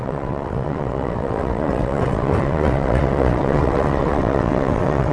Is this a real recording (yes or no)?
no